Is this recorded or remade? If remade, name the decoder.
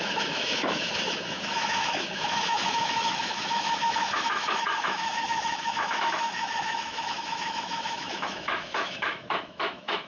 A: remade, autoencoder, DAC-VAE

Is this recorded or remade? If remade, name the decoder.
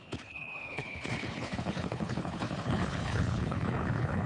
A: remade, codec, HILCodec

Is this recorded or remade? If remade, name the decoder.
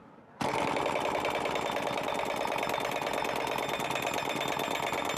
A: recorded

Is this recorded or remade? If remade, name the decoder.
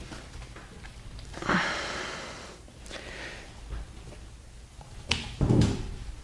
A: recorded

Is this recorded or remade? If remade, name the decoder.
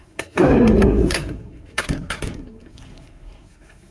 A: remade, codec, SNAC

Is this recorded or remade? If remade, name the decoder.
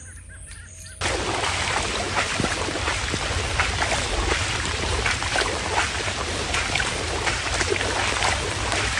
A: recorded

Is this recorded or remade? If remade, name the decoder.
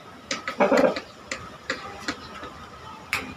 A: recorded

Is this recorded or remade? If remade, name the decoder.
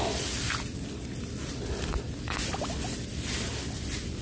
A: recorded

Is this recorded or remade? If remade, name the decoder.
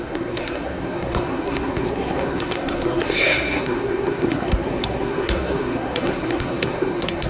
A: remade, codec, SNAC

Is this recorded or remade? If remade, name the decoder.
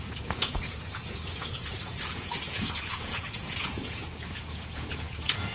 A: remade, vocoder, Vocos